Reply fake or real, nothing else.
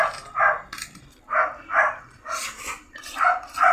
real